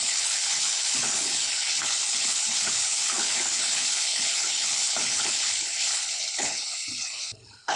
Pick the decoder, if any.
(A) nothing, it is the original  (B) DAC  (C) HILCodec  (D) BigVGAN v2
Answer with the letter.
C